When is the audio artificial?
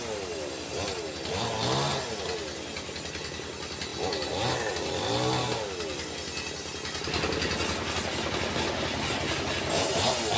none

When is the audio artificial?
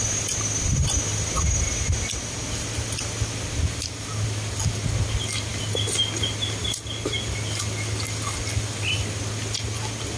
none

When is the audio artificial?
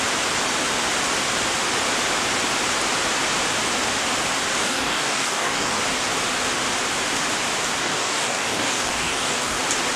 4.6-5.8 (codec, DAC); 7.8-9.6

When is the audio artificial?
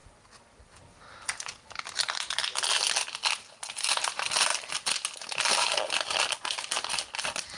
none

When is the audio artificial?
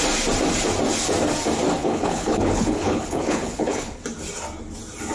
1.8-4.0 (codec, HILCodec)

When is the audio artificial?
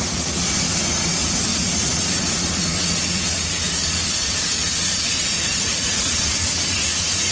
0.0-7.3 (vocoder, Vocos)